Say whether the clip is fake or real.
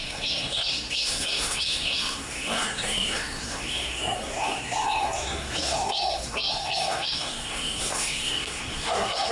fake